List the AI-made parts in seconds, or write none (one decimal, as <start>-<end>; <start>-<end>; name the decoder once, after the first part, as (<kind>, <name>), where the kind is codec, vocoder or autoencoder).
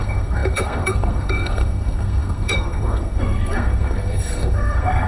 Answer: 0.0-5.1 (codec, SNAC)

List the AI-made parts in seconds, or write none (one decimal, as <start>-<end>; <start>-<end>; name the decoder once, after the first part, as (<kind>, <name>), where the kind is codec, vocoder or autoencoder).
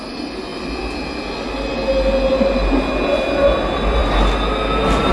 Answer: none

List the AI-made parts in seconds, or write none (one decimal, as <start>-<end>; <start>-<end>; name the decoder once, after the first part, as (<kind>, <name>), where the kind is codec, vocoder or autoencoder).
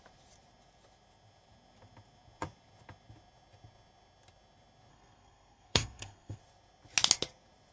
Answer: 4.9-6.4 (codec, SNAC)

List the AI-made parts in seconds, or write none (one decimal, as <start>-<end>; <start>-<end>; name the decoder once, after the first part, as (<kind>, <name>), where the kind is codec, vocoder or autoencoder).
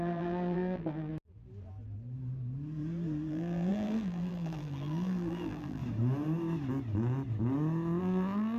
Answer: 0.0-1.1 (vocoder, BigVGAN v2); 3.3-5.8; 8.0-8.6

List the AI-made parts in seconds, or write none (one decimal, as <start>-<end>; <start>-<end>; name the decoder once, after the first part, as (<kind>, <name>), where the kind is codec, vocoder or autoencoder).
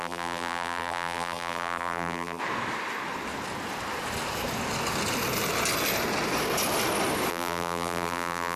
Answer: 0.0-2.4 (vocoder, BigVGAN v2); 7.3-8.6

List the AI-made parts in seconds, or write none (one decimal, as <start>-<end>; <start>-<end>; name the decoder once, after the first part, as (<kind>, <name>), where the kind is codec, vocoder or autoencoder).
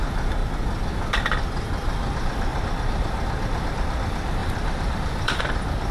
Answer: 4.4-5.4 (vocoder, BigVGAN v2)